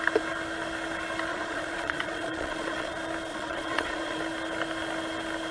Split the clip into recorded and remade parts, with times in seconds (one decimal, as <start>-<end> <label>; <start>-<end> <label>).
0.0-1.3 recorded; 1.3-2.9 remade; 2.9-3.3 recorded; 3.3-4.2 remade; 4.2-5.5 recorded

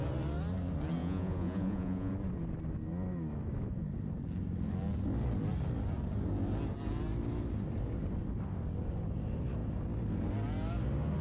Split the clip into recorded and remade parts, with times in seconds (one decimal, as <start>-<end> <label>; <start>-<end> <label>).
0.0-1.0 recorded; 1.0-2.1 remade; 2.1-11.2 recorded